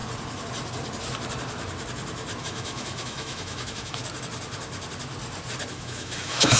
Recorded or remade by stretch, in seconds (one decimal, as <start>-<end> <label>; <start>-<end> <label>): 0.0-2.4 recorded; 2.4-4.0 remade; 4.0-5.7 recorded; 5.7-6.6 remade